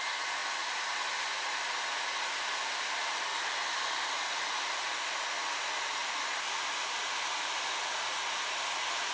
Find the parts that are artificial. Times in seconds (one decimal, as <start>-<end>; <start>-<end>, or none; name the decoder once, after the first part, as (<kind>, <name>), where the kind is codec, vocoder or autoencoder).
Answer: 3.3-4.5 (vocoder, BigVGAN v2)